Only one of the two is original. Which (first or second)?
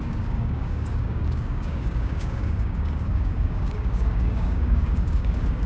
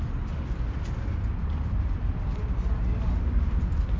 second